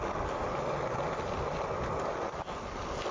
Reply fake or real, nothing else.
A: real